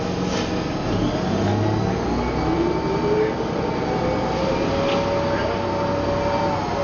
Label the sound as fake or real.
real